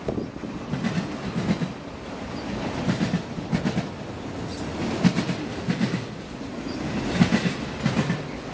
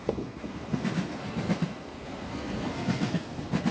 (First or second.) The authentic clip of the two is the first